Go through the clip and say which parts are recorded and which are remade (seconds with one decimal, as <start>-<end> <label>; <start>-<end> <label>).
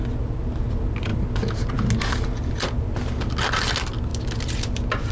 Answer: 0.0-5.1 recorded